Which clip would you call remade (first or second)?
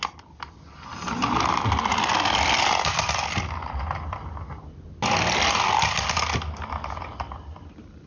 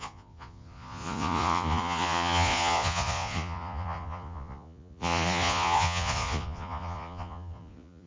second